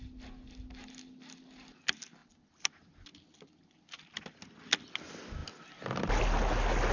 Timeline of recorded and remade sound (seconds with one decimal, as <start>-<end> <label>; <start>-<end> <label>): 0.0-6.9 recorded